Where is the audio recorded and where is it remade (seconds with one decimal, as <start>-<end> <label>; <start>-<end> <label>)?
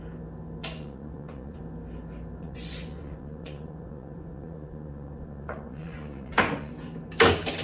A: 0.0-0.6 recorded; 0.6-1.6 remade; 1.6-2.4 recorded; 2.4-6.7 remade; 6.7-7.6 recorded